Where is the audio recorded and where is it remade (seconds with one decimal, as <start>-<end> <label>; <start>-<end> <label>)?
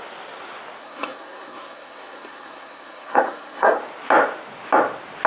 0.0-0.8 recorded; 0.8-3.8 remade; 3.8-5.3 recorded